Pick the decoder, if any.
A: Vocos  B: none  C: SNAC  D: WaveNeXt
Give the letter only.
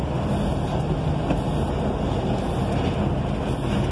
B